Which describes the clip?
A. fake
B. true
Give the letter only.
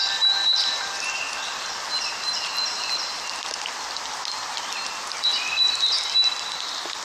B